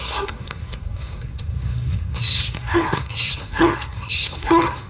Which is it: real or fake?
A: fake